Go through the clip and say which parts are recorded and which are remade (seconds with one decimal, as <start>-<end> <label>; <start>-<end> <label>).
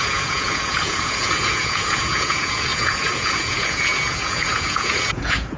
0.0-5.6 remade